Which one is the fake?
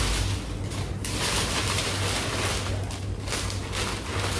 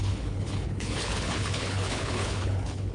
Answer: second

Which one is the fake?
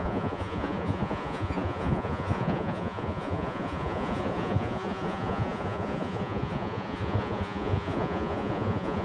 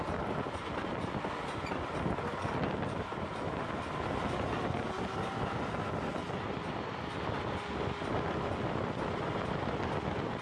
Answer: first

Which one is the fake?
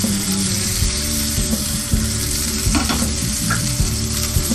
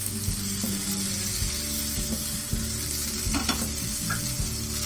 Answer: first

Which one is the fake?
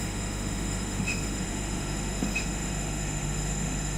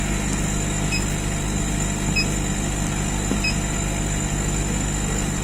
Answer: first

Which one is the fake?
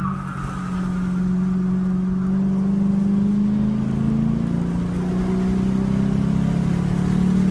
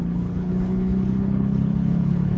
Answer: second